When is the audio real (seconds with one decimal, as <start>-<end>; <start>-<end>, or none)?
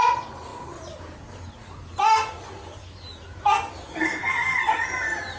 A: 0.0-3.9; 4.6-5.4